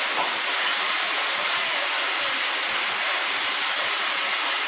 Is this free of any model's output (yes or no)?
yes